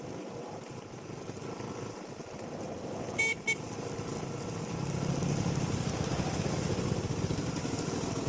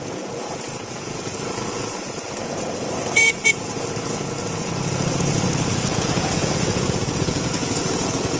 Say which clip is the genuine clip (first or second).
first